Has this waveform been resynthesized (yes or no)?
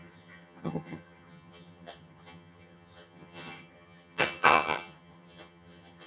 yes